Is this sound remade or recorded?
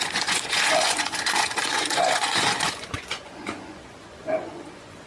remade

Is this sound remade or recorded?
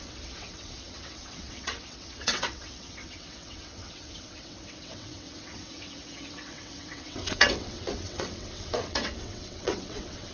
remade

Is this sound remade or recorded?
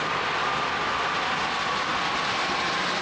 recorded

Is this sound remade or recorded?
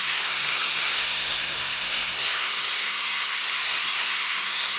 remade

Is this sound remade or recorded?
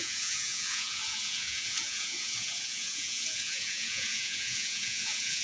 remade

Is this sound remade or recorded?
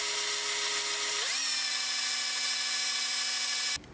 recorded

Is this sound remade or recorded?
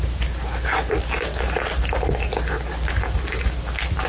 recorded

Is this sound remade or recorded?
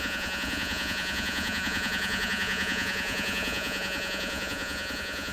remade